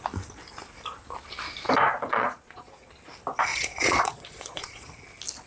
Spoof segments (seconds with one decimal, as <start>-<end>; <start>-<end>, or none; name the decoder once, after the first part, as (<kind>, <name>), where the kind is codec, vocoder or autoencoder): 2.1-2.9 (vocoder, Vocos); 3.5-4.9